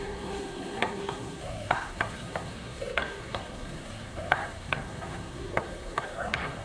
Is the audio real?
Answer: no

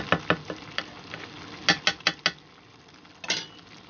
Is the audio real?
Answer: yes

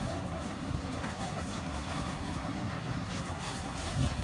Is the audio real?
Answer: no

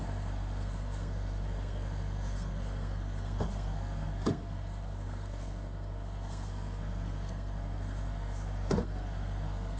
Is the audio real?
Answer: no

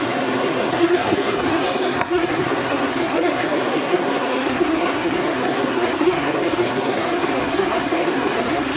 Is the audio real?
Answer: no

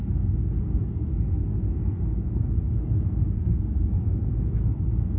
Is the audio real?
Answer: no